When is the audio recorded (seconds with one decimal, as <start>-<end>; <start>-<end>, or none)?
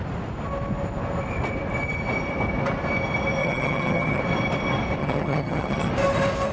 0.0-3.4; 4.2-5.0; 5.9-6.5